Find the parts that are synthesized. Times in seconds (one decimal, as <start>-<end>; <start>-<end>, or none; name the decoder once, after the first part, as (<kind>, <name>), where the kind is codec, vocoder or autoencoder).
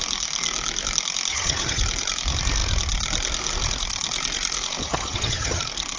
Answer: 1.3-1.8 (vocoder, HiFi-GAN); 4.8-5.6